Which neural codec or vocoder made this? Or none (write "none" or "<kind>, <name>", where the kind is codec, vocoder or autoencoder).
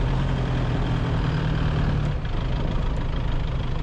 none